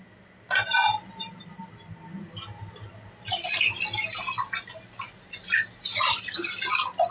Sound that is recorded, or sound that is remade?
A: recorded